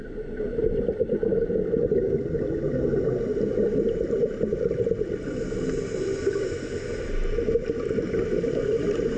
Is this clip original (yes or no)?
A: yes